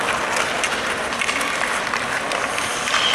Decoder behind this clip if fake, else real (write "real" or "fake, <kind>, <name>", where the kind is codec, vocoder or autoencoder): real